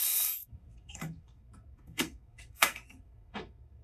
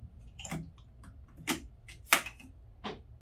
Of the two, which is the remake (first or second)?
first